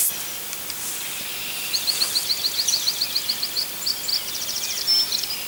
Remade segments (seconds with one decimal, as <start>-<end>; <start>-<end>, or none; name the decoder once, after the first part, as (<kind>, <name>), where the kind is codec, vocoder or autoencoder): none